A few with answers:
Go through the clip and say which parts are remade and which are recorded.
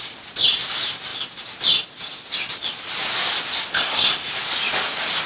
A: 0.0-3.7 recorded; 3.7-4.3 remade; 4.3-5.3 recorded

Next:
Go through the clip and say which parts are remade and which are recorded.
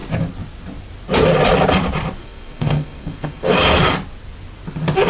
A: 0.0-2.2 recorded; 2.2-3.5 remade; 3.5-5.1 recorded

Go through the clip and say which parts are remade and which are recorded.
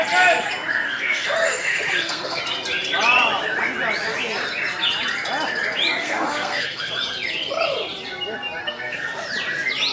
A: 0.0-0.7 recorded; 0.7-2.4 remade; 2.4-6.0 recorded; 6.0-6.9 remade; 6.9-8.6 recorded; 8.6-9.2 remade; 9.2-9.9 recorded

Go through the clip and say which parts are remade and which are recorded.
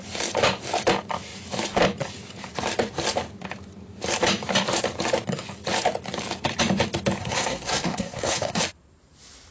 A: 0.0-7.2 recorded; 7.2-8.6 remade; 8.6-9.5 recorded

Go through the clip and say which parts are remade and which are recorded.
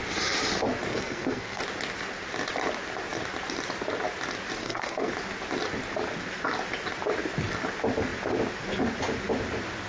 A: 0.0-0.9 recorded; 0.9-1.6 remade; 1.6-4.6 recorded; 4.6-5.1 remade; 5.1-9.9 recorded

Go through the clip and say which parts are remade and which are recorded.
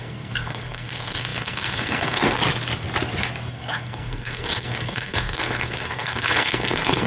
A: 0.0-2.4 remade; 2.4-3.5 recorded; 3.5-7.1 remade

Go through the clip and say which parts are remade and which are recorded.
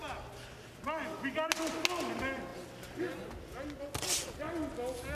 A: 0.0-5.1 recorded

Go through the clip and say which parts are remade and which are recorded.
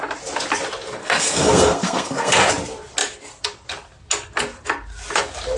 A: 0.0-1.0 recorded; 1.0-2.4 remade; 2.4-5.6 recorded